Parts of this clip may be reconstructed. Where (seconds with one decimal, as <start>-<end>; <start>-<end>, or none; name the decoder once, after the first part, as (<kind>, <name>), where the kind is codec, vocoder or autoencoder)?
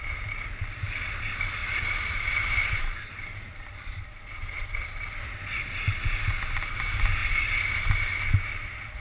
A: 1.6-2.8 (vocoder, BigVGAN v2)